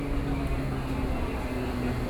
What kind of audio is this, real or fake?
real